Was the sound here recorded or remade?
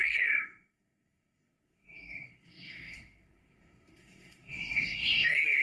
remade